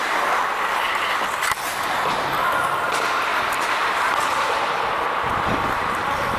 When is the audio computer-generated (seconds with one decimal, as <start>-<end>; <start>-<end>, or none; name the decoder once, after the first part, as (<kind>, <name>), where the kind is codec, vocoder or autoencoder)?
none